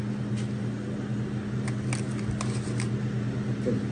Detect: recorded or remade recorded